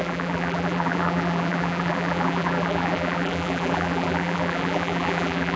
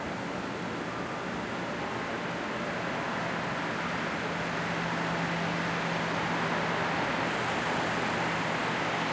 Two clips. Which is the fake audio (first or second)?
first